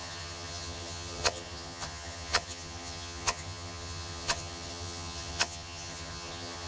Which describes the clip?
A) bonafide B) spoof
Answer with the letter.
B